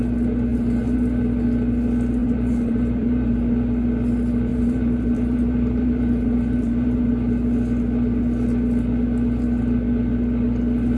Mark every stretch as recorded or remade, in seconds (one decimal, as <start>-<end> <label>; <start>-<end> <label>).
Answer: 0.0-0.5 recorded; 0.5-1.2 remade; 1.2-2.2 recorded; 2.2-3.5 remade; 3.5-4.5 recorded; 4.5-7.0 remade; 7.0-11.0 recorded